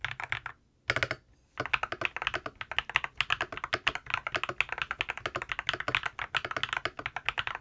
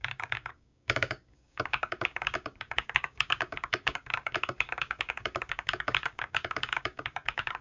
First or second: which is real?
first